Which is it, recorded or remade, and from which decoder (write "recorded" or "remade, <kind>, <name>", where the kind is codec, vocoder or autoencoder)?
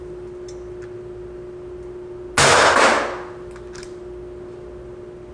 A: recorded